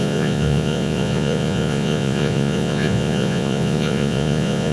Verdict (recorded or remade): remade